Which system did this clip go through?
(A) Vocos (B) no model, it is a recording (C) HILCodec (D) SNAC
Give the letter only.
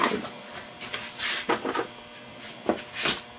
B